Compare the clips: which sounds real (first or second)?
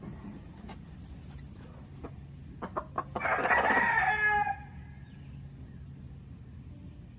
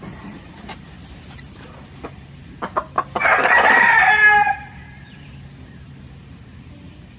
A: first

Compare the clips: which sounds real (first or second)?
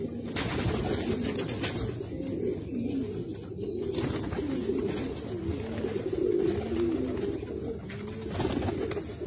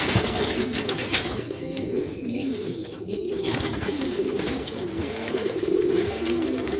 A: first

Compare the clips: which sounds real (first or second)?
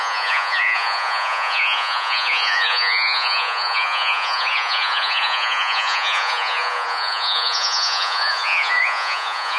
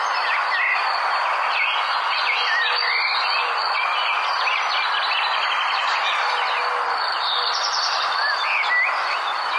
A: second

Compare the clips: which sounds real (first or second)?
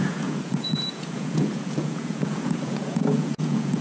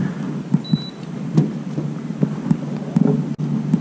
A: second